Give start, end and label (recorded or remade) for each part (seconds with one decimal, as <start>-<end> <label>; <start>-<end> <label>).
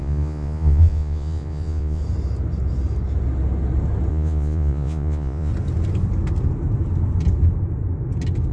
0.0-2.0 remade; 2.0-4.1 recorded; 4.1-5.5 remade; 5.5-8.5 recorded